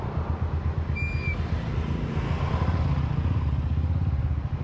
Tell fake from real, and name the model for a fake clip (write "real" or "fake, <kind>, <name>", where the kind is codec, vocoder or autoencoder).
real